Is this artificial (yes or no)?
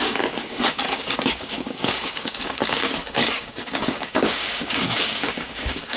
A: yes